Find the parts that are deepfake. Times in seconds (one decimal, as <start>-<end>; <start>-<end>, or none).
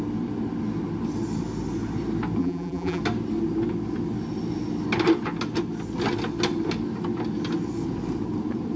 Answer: 2.4-3.0